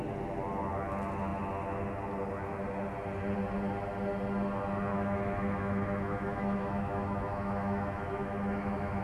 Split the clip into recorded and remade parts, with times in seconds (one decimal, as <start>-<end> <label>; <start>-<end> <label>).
0.0-4.9 recorded; 4.9-9.0 remade